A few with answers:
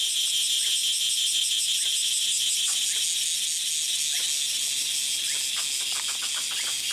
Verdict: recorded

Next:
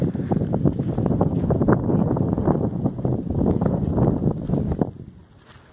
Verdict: recorded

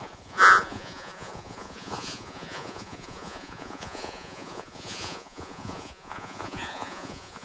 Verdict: remade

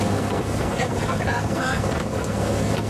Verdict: remade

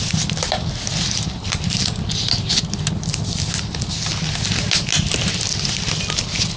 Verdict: recorded